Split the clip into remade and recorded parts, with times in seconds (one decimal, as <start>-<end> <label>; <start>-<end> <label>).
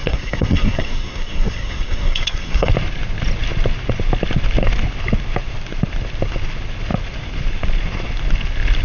0.0-2.7 remade; 2.7-8.8 recorded